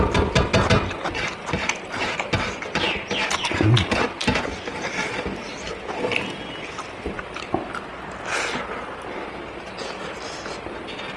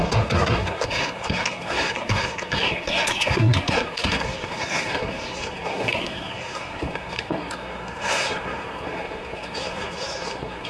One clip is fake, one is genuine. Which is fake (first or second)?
second